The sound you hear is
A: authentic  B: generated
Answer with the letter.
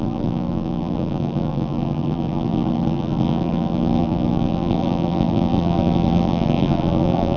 B